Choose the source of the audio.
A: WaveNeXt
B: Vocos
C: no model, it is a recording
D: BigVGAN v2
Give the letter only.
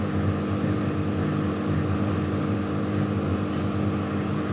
C